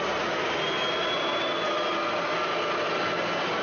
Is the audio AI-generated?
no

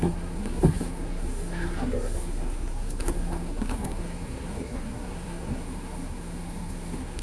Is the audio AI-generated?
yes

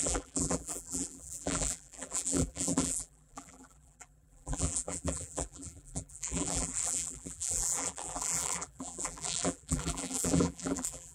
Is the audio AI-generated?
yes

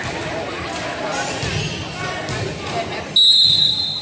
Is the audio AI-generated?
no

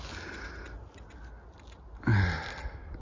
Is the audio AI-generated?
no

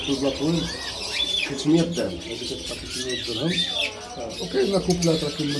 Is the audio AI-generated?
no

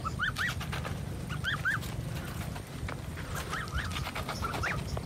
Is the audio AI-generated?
no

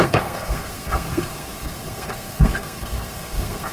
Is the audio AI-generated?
yes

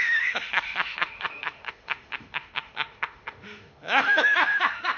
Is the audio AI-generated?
yes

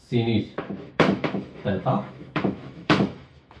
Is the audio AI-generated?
yes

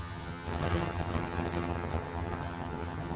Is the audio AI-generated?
yes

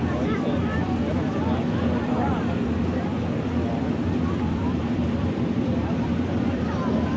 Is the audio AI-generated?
yes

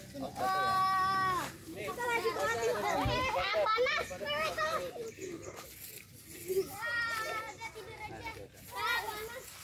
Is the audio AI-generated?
no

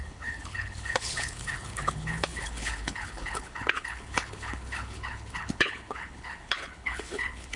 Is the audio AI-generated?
yes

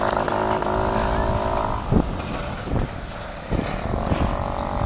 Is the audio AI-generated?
no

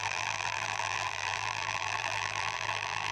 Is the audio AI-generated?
yes